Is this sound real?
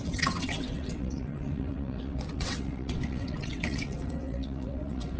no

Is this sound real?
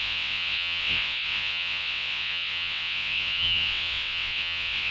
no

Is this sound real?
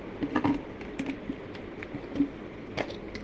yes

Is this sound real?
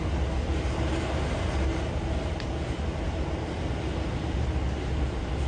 yes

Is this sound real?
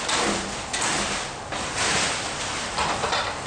yes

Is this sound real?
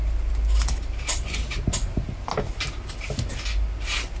yes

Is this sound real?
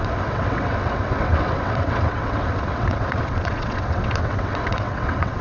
no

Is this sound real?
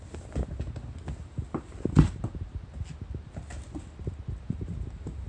yes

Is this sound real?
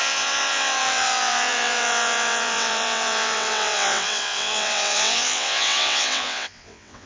no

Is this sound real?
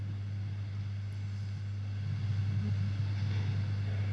yes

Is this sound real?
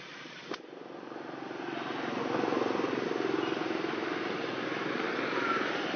yes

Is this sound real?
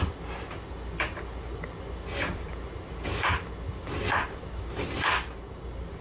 yes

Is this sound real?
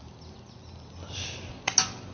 yes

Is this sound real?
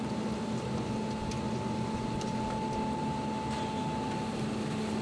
yes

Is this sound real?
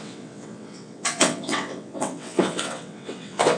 no